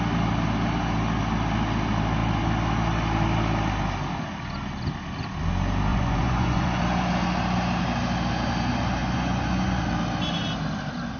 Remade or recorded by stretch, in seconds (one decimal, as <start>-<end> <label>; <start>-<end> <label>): 0.0-5.9 recorded; 5.9-6.8 remade; 6.8-9.0 recorded; 9.0-9.8 remade; 9.8-11.2 recorded